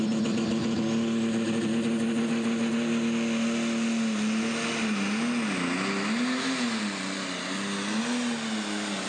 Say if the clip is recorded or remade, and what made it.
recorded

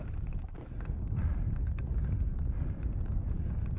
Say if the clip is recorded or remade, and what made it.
recorded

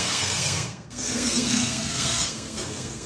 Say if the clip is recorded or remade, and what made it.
remade, codec, SNAC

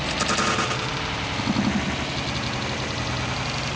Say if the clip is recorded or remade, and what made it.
recorded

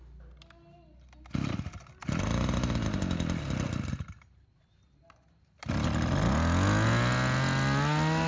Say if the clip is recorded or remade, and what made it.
recorded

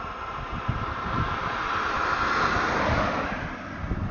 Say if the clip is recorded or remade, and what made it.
recorded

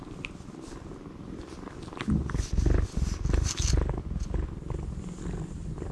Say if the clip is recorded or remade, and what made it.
recorded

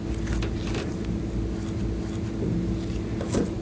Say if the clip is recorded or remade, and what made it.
recorded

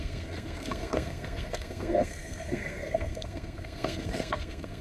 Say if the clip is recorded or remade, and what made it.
remade, codec, SNAC